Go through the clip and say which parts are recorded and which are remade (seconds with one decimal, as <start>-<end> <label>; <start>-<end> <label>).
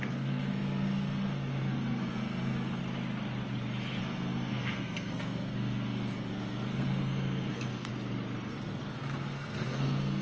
0.0-2.8 remade; 2.8-4.0 recorded; 4.0-7.9 remade; 7.9-8.5 recorded; 8.5-10.2 remade